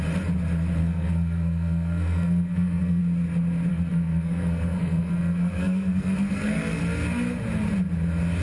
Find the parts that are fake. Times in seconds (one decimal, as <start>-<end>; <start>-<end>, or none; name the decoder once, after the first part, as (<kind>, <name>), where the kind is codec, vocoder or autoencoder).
0.8-3.0 (codec, SNAC); 3.7-6.8